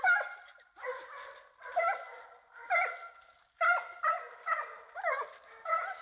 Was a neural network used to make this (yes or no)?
no